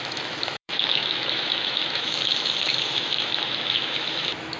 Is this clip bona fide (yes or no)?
no